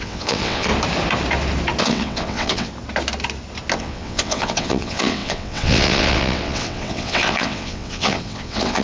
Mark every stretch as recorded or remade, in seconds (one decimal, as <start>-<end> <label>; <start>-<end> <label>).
0.0-0.7 remade; 0.7-1.8 recorded; 1.8-2.7 remade; 2.7-3.8 recorded; 3.8-8.8 remade